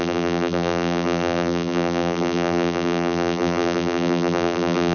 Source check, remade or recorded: remade